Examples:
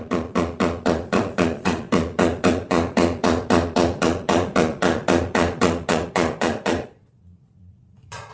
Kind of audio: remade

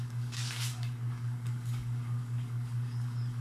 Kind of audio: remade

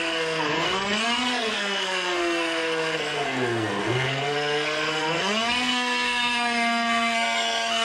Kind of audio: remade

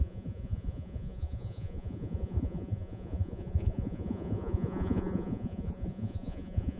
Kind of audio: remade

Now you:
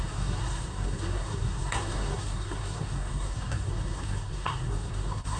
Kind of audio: remade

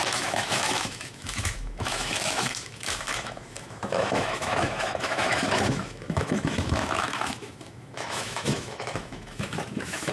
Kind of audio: remade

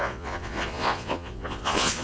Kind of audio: remade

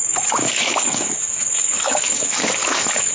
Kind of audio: remade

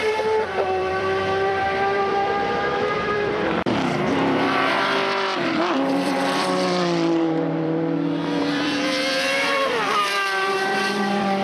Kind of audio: remade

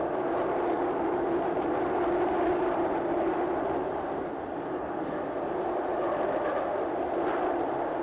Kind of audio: recorded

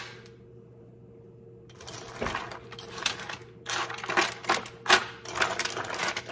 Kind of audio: recorded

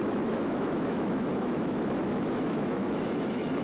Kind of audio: remade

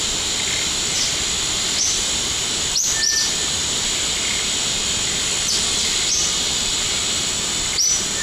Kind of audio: recorded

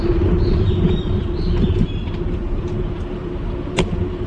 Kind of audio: recorded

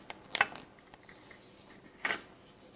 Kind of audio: recorded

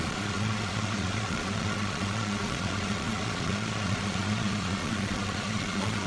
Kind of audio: remade